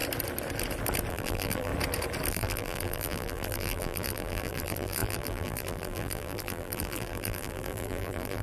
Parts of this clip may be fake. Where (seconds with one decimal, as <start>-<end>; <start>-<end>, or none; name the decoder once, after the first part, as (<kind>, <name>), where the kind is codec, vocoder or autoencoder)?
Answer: 1.1-1.7 (vocoder, BigVGAN v2); 2.3-8.4